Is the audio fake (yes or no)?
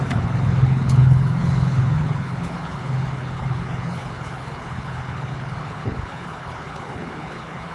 yes